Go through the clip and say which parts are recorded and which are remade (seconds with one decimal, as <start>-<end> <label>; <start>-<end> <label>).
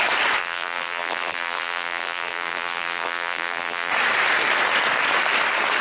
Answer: 0.0-0.4 recorded; 0.4-3.9 remade; 3.9-5.8 recorded